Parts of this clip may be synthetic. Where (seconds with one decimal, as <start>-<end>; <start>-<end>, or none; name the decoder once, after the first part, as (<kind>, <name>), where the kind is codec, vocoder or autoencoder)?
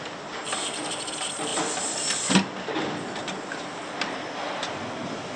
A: 3.2-3.8 (vocoder, BigVGAN v2)